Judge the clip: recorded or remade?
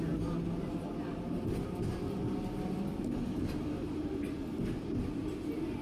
recorded